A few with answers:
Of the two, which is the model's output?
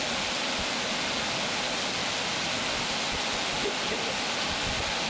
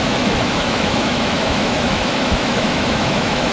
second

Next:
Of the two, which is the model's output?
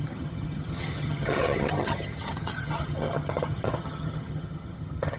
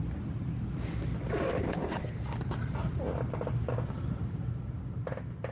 first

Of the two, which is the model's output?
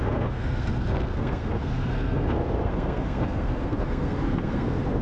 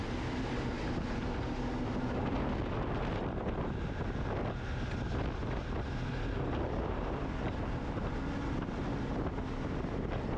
first